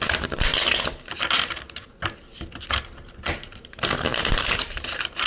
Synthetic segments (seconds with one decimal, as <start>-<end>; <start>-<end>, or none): 0.0-0.5; 2.7-5.3